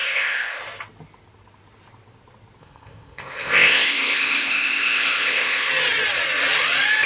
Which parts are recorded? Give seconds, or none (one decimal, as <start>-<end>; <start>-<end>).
0.6-2.6; 5.7-7.1